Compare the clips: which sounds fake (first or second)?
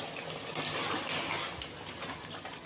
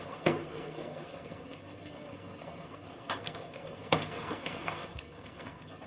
second